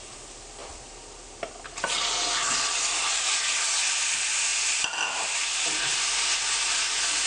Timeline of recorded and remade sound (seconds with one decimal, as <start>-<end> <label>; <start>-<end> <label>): 0.0-7.3 recorded

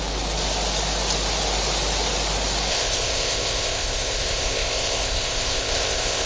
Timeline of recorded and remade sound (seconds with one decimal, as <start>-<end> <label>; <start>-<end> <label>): 0.0-2.7 recorded; 2.7-6.3 remade